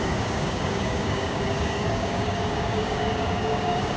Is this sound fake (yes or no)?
yes